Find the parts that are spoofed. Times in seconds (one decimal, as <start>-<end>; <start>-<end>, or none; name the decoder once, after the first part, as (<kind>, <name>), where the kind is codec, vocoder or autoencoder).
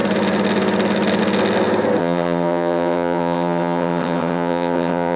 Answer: 2.0-5.2 (vocoder, HiFi-GAN)